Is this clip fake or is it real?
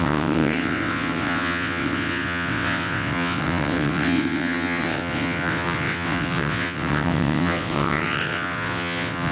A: fake